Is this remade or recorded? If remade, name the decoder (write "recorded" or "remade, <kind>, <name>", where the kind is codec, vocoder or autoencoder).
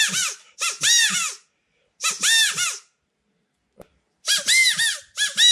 recorded